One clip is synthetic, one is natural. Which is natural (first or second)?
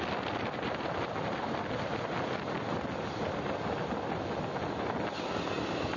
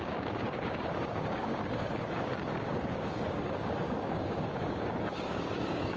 first